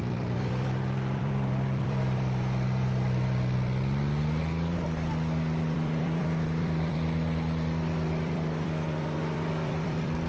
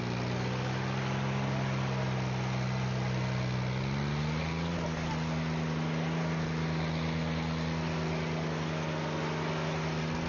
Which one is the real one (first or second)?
second